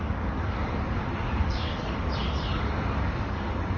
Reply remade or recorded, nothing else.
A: remade